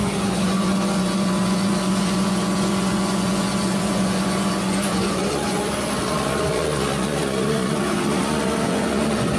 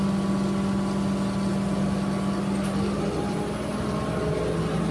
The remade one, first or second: first